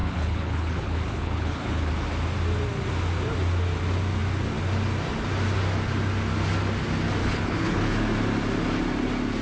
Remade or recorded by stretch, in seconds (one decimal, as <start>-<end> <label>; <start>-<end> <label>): 0.0-1.9 remade; 1.9-7.2 recorded; 7.2-7.8 remade; 7.8-9.4 recorded